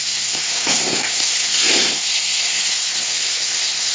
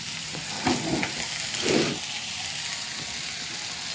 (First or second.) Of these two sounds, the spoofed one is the first